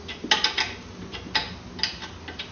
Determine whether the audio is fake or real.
real